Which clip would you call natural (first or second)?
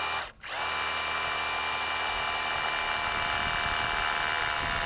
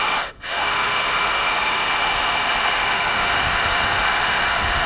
first